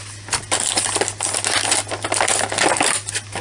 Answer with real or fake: real